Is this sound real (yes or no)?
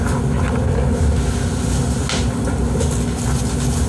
yes